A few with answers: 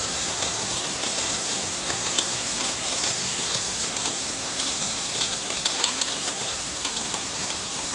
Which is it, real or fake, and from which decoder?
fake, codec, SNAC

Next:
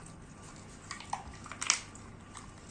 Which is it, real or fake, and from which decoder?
real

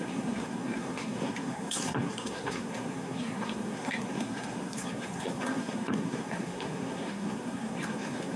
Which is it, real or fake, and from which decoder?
fake, codec, SNAC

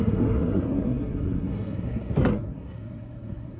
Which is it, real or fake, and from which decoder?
fake, codec, SNAC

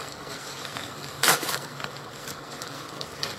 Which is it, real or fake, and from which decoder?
fake, codec, SNAC